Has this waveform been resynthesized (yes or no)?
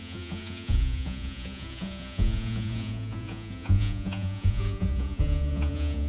yes